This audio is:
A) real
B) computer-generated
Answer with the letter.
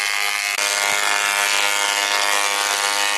A